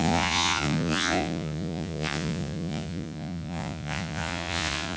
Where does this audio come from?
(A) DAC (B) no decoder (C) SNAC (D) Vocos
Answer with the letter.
D